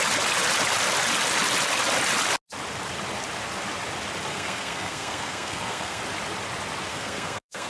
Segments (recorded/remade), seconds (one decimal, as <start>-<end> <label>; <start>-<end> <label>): 0.0-4.3 recorded; 4.3-6.0 remade; 6.0-6.9 recorded; 6.9-7.7 remade